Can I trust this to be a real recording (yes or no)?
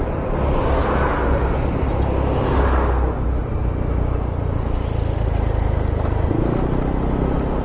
yes